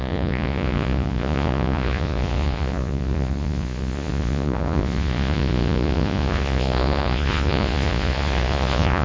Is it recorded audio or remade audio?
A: remade